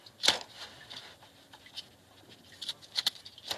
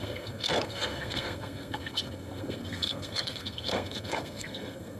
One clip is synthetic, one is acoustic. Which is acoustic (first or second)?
first